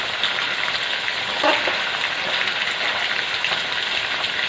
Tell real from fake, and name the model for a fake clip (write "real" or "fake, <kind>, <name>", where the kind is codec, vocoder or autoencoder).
real